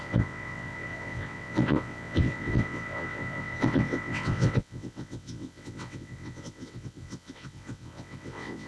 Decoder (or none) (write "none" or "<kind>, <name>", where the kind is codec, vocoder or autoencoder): vocoder, WaveNeXt